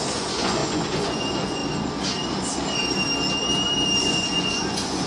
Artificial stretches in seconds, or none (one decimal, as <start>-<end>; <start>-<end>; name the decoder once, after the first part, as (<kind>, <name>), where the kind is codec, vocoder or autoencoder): 0.0-1.6 (vocoder, Vocos); 4.0-5.1